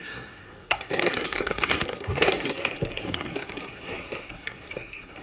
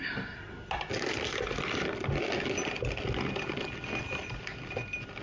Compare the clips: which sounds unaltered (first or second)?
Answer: second